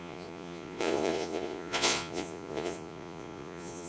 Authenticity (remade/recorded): remade